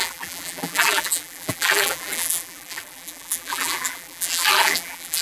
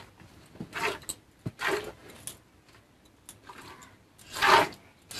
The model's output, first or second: first